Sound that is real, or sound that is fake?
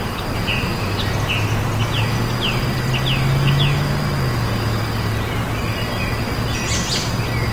real